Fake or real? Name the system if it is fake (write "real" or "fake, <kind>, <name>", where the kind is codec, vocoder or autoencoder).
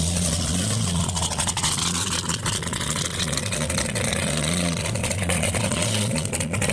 fake, vocoder, Vocos